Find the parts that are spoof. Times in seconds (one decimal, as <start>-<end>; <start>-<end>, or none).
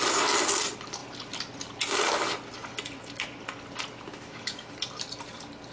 4.1-4.7